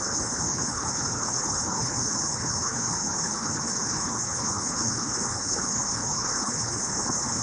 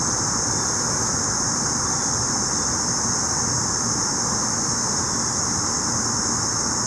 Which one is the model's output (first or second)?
first